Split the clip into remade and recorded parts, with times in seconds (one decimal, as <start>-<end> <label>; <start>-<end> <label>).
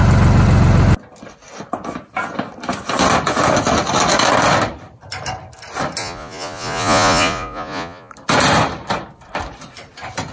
0.0-6.0 recorded; 6.0-8.1 remade; 8.1-10.3 recorded